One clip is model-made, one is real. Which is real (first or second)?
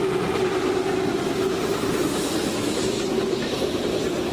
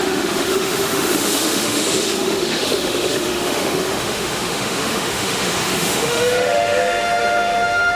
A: first